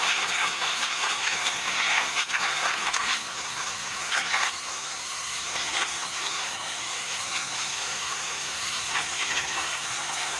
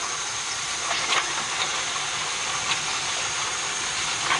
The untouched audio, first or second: second